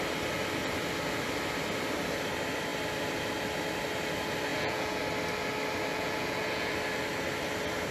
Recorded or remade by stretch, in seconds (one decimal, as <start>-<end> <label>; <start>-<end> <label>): 0.0-4.5 recorded; 4.5-5.0 remade; 5.0-5.9 recorded; 5.9-6.7 remade; 6.7-7.9 recorded